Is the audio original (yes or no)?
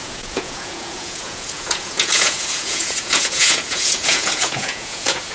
no